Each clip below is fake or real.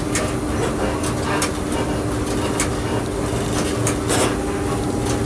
real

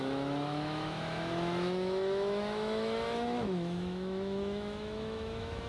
fake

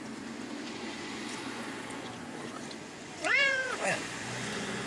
fake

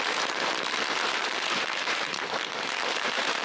fake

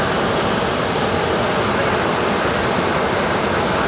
real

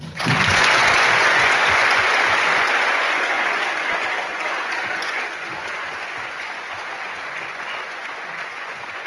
fake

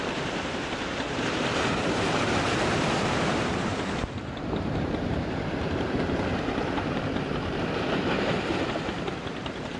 fake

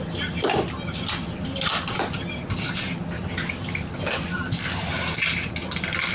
real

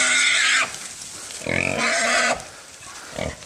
real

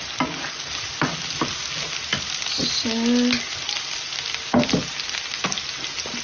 real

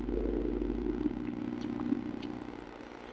real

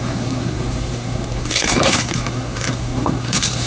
fake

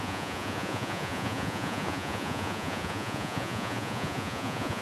fake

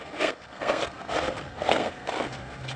fake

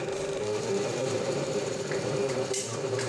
fake